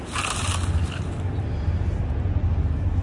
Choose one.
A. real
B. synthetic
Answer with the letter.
A